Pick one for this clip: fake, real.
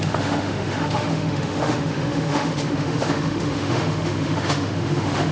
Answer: fake